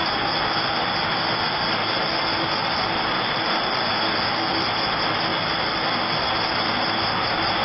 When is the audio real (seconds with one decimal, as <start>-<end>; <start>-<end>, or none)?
0.0-1.2; 5.3-6.5